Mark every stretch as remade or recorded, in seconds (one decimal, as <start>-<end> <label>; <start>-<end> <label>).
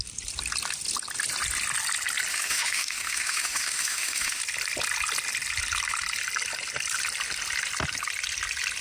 0.0-2.3 recorded; 2.3-4.4 remade; 4.4-8.8 recorded